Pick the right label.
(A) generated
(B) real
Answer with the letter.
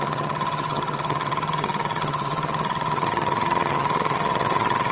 A